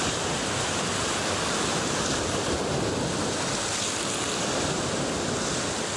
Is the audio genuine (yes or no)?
yes